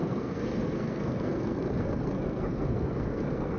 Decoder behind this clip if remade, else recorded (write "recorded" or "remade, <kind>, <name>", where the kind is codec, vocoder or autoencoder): remade, codec, SNAC